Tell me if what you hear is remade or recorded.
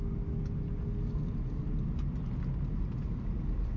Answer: recorded